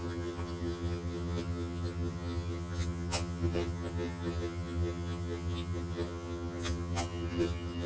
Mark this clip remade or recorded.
remade